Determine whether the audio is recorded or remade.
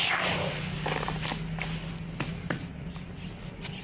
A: recorded